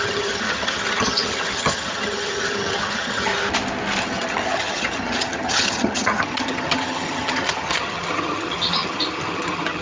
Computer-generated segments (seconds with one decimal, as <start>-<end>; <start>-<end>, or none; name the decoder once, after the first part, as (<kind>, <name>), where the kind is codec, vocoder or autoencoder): 0.0-3.3 (vocoder, HiFi-GAN); 4.0-9.8